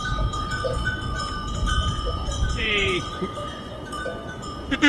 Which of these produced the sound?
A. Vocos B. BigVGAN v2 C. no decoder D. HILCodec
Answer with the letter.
A